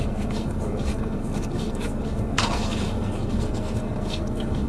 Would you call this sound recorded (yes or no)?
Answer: no